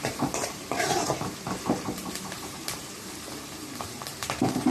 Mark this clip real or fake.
fake